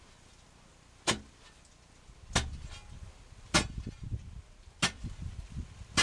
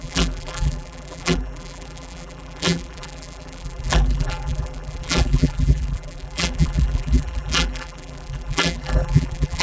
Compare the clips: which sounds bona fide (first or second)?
first